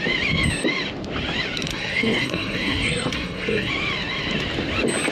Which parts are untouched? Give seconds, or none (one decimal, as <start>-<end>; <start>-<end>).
0.0-1.7; 3.7-5.1